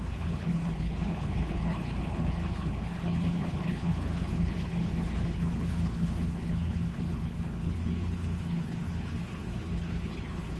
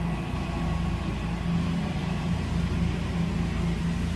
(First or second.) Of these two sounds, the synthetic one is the first